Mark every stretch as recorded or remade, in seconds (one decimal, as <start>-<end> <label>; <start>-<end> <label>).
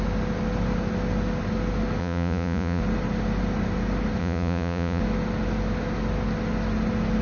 0.0-2.0 recorded; 2.0-2.8 remade; 2.8-4.2 recorded; 4.2-5.0 remade; 5.0-7.2 recorded